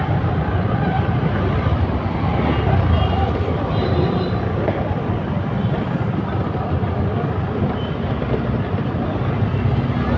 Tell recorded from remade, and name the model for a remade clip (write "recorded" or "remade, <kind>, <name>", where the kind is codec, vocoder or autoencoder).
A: recorded